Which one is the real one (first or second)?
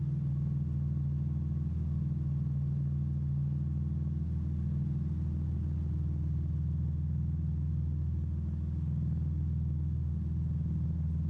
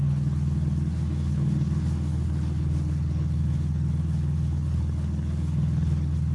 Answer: first